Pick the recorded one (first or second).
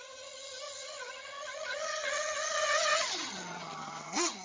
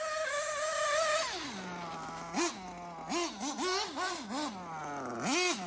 second